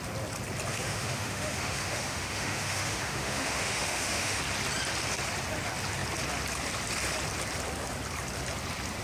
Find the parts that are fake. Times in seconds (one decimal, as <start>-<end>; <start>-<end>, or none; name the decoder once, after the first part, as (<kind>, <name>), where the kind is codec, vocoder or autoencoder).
0.7-4.4 (autoencoder, DAC-VAE)